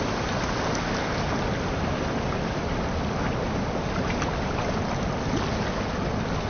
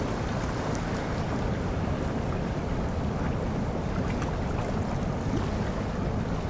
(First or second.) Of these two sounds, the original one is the first